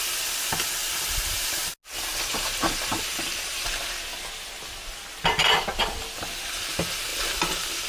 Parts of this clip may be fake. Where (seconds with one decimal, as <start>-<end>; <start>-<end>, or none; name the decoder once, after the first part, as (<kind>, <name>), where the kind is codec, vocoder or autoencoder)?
0.8-1.7 (vocoder, BigVGAN v2)